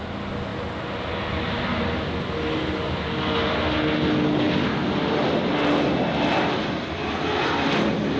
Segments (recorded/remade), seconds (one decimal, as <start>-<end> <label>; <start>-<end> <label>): 0.0-8.2 recorded

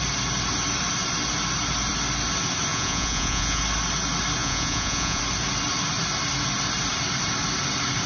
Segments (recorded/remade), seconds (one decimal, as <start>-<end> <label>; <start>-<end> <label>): 0.0-2.7 recorded; 2.7-3.6 remade; 3.6-4.4 recorded; 4.4-5.2 remade; 5.2-8.1 recorded